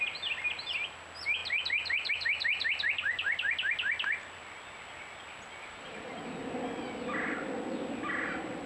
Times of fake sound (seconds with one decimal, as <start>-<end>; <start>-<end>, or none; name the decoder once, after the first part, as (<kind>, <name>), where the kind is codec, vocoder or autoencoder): 2.5-3.4 (vocoder, BigVGAN v2); 5.6-6.2